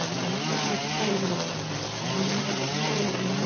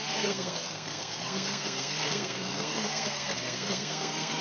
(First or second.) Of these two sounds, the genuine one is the first